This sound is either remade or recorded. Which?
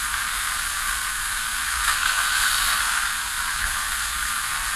remade